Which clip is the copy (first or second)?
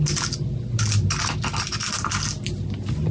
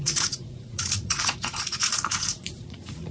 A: second